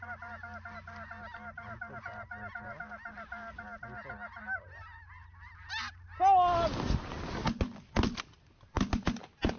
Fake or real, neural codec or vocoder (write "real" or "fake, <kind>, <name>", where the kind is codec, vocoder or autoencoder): real